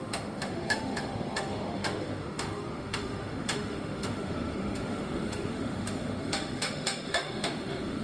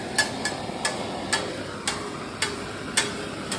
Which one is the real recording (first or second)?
second